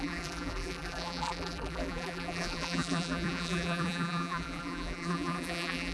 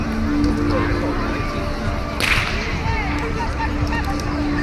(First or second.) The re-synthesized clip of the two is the first